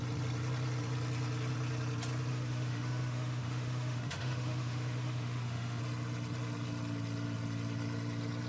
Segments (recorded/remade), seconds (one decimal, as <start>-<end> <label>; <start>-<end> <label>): 0.0-2.3 recorded; 2.3-5.8 remade; 5.8-8.5 recorded